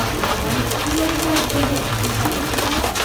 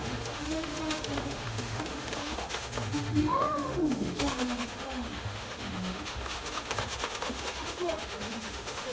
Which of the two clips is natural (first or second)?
first